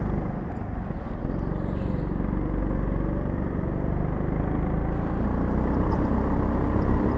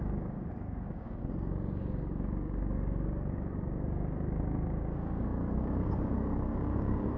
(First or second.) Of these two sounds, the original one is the first